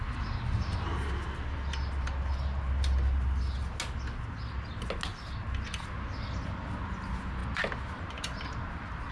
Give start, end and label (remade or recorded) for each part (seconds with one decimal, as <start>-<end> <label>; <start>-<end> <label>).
0.0-9.1 recorded